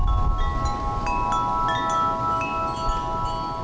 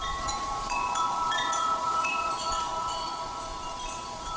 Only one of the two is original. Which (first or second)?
first